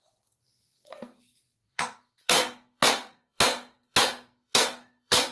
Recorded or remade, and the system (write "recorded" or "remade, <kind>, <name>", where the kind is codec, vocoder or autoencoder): remade, codec, SNAC